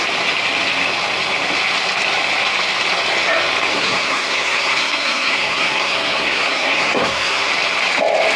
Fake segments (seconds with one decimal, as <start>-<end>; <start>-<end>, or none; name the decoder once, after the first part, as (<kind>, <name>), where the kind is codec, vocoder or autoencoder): 3.7-7.5 (codec, SNAC)